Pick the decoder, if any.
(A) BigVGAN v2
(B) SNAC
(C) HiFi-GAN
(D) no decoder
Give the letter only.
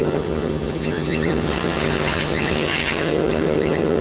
C